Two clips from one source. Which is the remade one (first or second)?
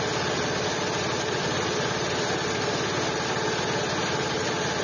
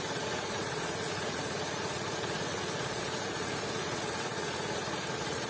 second